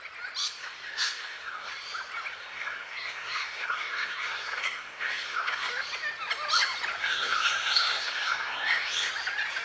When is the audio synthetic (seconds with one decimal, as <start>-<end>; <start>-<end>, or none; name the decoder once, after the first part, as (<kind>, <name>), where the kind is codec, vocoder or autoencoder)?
0.6-1.7 (codec, SNAC); 2.4-5.7; 7.0-9.1